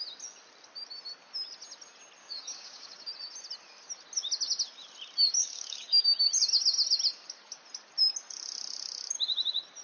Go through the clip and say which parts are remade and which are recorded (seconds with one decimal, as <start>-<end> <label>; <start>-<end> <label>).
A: 0.0-2.2 recorded; 2.2-3.1 remade; 3.1-5.4 recorded; 5.4-6.0 remade; 6.0-9.8 recorded